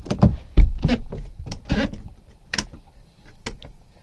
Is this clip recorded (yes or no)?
no